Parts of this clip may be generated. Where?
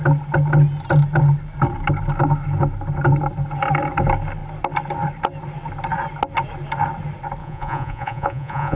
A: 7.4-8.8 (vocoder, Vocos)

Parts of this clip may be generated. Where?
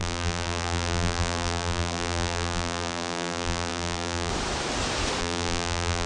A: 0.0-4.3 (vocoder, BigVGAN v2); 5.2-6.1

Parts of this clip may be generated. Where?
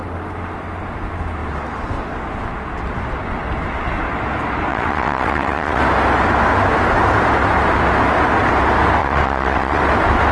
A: 4.7-5.8 (vocoder, WaveNeXt); 9.0-9.8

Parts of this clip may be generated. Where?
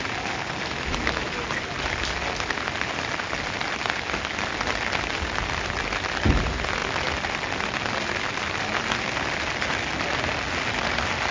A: none